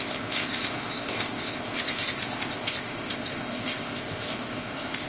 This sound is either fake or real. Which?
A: fake